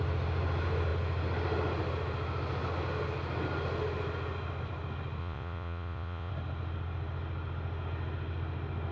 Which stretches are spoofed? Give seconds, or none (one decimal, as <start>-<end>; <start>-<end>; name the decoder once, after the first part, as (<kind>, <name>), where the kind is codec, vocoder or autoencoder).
5.2-6.3 (vocoder, Vocos)